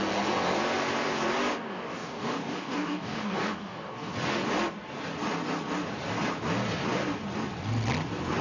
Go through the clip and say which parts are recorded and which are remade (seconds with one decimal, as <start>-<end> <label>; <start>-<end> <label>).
0.0-1.5 recorded; 1.5-4.1 remade; 4.1-8.4 recorded

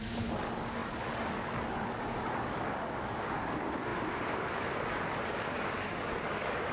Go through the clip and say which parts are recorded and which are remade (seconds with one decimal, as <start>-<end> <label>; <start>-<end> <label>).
0.0-6.7 remade

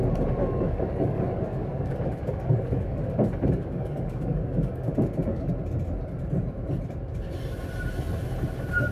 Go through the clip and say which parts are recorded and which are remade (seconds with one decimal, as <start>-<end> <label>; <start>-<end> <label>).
0.0-0.4 recorded; 0.4-5.5 remade; 5.5-8.9 recorded

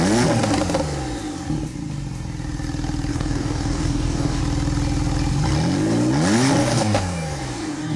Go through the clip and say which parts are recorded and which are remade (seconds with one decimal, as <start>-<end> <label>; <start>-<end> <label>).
0.0-3.1 recorded; 3.1-4.4 remade; 4.4-6.6 recorded; 6.6-8.0 remade

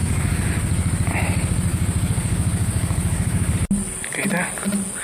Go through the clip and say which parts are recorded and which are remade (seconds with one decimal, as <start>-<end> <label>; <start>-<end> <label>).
0.0-0.5 remade; 0.5-1.7 recorded; 1.7-3.5 remade; 3.5-5.0 recorded

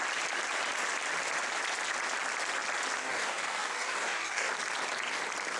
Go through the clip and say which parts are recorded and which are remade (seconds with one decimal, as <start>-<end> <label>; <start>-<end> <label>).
0.0-3.0 recorded; 3.0-4.5 remade; 4.5-5.6 recorded